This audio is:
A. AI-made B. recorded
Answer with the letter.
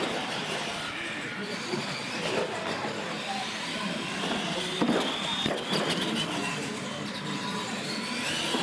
B